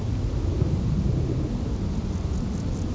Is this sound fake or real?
real